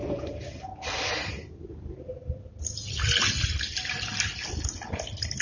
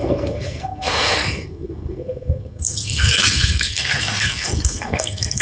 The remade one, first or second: second